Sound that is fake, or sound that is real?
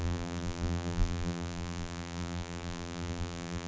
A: fake